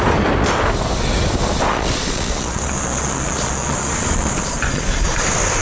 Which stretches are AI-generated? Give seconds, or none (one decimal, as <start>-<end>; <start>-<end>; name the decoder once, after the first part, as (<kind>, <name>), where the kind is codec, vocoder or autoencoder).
1.7-5.1 (vocoder, Vocos)